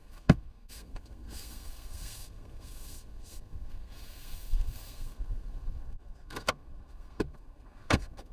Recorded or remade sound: remade